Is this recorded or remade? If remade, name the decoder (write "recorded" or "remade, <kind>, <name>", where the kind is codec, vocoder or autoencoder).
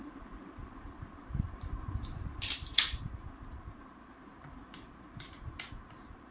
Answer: remade, vocoder, BigVGAN v2